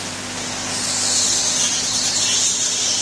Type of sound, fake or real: real